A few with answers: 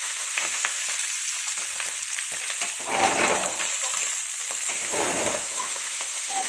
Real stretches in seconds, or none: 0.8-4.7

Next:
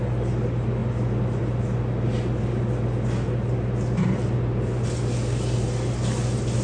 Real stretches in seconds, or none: 0.0-6.6

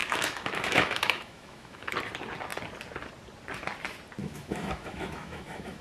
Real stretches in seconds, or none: 1.9-4.2

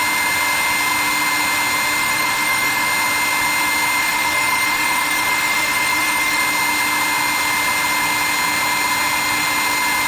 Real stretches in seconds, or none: 0.0-2.0; 2.9-4.0; 6.4-10.1

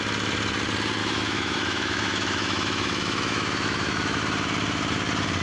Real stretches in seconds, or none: 0.0-1.0; 4.2-5.4

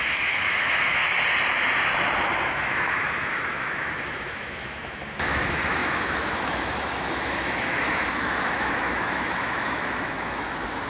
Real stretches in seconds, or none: 1.0-2.5

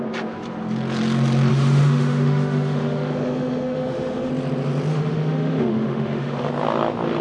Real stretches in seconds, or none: 0.0-1.5; 4.3-4.9; 6.5-7.2